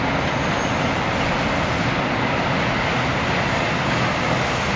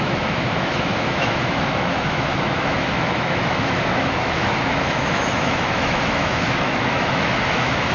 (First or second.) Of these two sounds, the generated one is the second